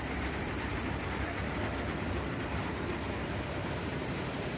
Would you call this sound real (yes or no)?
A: no